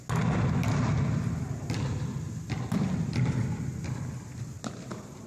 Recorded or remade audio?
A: recorded